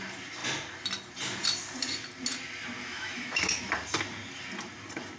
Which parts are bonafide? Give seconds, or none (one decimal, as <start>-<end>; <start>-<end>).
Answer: 0.0-2.8; 3.7-5.2